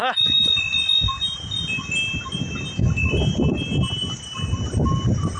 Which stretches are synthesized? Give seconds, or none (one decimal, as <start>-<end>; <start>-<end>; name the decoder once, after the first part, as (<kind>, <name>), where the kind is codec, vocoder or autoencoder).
none